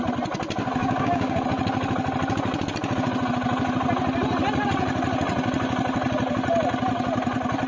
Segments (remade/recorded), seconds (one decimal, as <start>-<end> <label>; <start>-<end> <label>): 0.0-0.8 recorded; 0.8-1.4 remade; 1.4-7.7 recorded